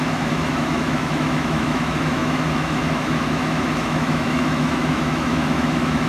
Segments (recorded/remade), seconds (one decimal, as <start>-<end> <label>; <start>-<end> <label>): 0.0-6.1 remade